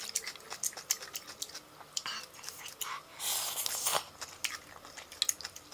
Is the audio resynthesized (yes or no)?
no